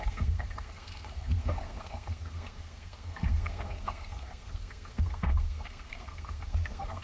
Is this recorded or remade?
remade